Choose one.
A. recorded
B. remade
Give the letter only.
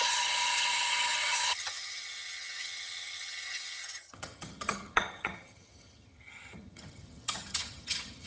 B